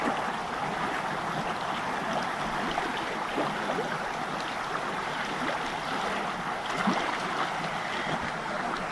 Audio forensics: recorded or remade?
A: recorded